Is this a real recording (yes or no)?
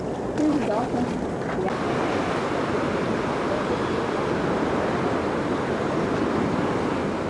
yes